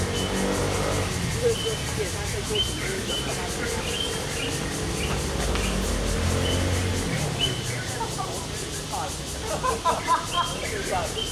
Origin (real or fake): real